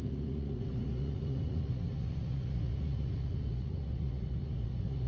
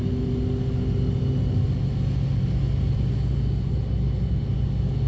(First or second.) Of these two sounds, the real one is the second